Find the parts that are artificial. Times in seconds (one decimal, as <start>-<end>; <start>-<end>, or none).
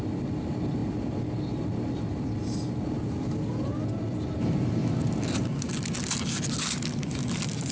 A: none